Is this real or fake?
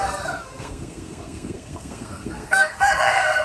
fake